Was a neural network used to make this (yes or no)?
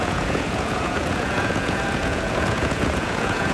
yes